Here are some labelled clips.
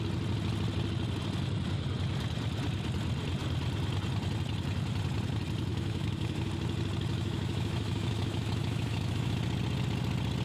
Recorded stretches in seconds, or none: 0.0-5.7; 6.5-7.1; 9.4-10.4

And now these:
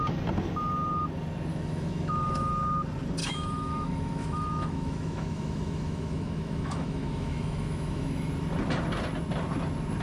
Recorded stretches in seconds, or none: 0.0-1.5; 2.5-3.2; 8.3-10.0

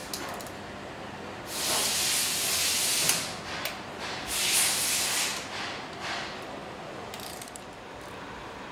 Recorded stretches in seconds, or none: 0.0-6.6

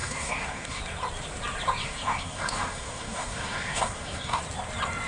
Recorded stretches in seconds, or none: 0.8-1.8; 4.4-5.1

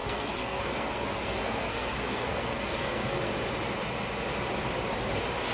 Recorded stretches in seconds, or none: 3.3-5.5

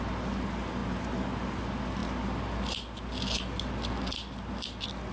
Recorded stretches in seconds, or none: 0.0-5.1

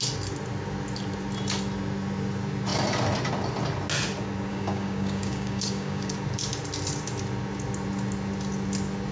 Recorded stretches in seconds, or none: 0.0-4.5; 6.1-9.1